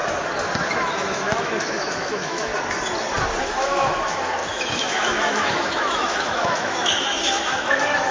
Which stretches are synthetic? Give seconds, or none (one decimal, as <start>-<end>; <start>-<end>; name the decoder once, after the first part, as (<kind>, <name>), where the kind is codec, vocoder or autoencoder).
0.8-2.5 (autoencoder, DAC-VAE); 3.4-8.1